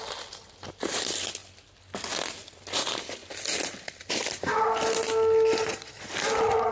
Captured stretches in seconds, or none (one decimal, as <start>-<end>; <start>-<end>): 0.0-5.6; 6.1-6.7